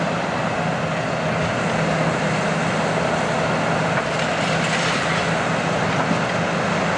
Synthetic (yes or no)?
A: no